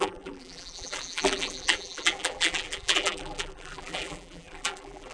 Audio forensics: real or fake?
fake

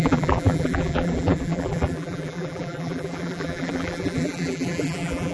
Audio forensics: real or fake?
fake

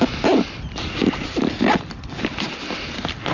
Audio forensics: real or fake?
real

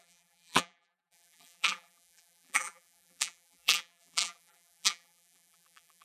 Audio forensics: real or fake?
fake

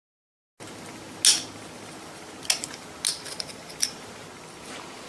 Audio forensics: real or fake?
real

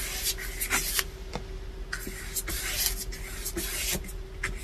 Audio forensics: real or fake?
real